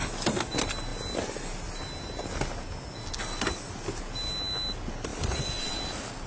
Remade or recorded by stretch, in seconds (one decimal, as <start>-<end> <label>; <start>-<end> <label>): 0.0-5.1 recorded; 5.1-5.8 remade; 5.8-6.3 recorded